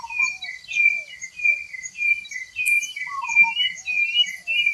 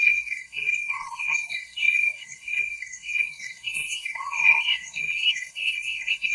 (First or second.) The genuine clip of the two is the first